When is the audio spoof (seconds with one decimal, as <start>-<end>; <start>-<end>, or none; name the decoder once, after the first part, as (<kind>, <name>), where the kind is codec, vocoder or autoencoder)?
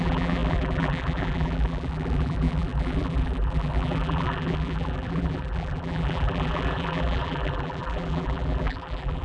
0.0-9.2 (vocoder, BigVGAN v2)